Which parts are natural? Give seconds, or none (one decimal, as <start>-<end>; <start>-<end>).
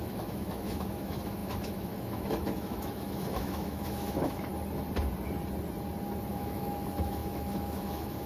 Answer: 4.5-6.3